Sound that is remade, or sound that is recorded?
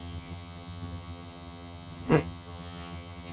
remade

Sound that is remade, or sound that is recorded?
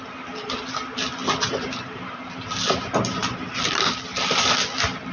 recorded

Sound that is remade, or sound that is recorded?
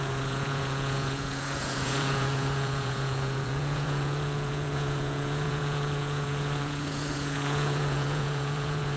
remade